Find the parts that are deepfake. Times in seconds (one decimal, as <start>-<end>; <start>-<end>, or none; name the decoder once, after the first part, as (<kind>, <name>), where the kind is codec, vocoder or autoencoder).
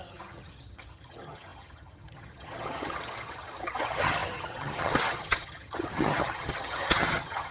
0.0-7.5 (vocoder, HiFi-GAN)